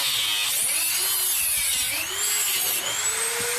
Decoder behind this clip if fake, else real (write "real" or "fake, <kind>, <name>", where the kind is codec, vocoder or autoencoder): real